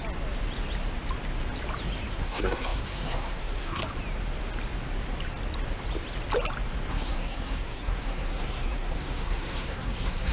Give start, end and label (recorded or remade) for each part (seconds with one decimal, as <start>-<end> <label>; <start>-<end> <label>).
0.0-2.1 recorded; 2.1-3.8 remade; 3.8-6.9 recorded; 6.9-10.3 remade